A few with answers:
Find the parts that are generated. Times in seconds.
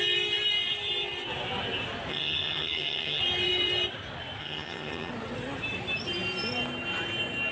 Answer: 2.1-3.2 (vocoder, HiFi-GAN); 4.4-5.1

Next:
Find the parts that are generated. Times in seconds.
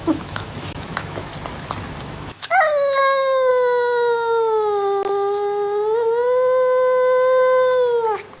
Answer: 0.0-1.3 (autoencoder, DAC-VAE); 2.0-2.5; 3.0-3.5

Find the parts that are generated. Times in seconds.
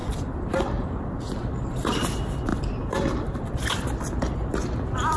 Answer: 0.0-1.2 (vocoder, BigVGAN v2); 2.5-3.6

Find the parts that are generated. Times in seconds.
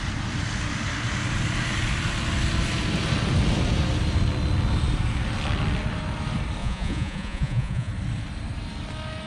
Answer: 6.6-7.9 (vocoder, Vocos)